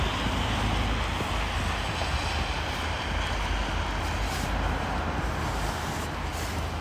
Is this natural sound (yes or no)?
yes